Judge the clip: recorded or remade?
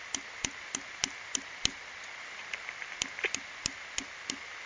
recorded